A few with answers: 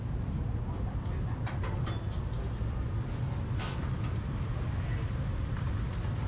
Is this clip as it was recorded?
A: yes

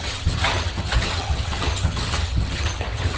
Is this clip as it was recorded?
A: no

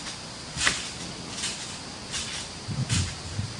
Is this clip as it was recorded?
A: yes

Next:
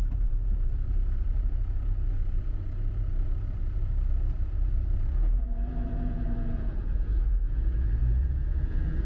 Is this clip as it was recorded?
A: no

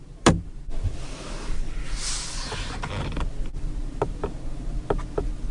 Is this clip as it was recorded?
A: yes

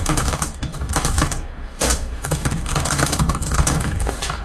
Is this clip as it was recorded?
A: no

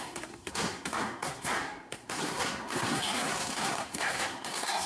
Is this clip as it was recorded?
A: no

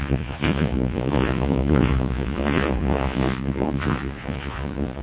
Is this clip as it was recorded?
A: no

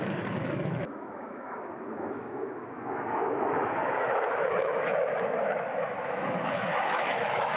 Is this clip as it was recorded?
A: no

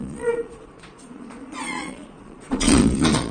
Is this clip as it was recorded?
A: no